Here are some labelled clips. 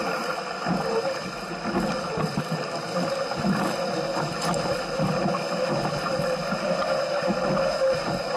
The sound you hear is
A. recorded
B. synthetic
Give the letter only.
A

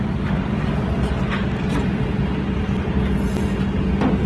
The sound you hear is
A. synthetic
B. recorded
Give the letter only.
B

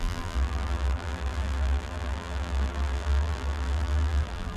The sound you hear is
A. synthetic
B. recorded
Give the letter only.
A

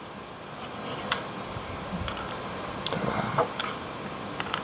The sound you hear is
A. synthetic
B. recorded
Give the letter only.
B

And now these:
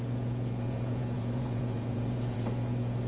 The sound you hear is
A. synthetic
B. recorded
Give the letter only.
A